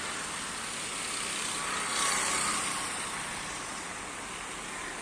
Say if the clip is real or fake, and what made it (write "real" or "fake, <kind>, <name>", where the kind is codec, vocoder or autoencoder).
real